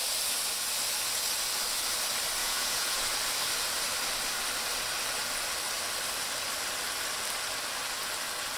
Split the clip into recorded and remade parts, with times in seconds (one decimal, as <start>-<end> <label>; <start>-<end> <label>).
0.0-2.4 recorded; 2.4-3.0 remade; 3.0-8.6 recorded